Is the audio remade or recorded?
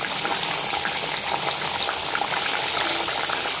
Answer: recorded